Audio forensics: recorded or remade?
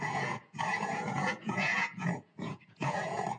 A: remade